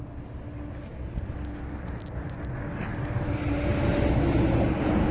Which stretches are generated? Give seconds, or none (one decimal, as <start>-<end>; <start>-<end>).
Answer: none